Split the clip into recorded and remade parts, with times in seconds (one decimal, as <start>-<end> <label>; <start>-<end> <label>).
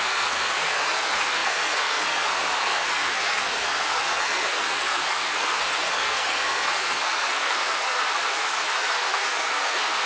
0.0-10.1 remade